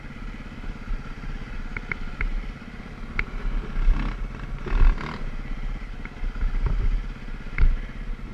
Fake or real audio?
real